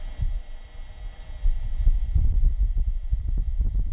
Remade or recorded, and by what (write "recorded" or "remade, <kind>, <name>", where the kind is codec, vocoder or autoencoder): remade, vocoder, BigVGAN v2